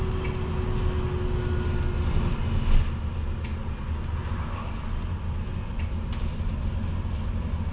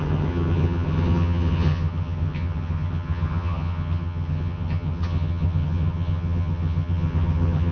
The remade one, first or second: second